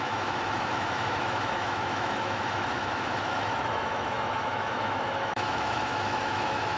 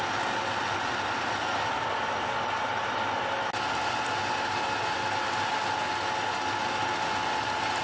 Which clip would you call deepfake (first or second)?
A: first